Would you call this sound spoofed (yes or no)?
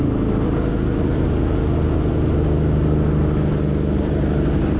no